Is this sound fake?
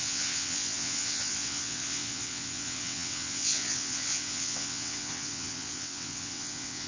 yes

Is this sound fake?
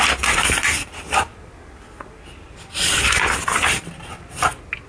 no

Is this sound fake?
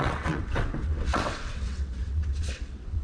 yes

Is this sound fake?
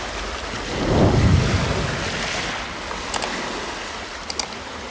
no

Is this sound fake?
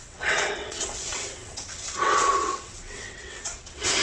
yes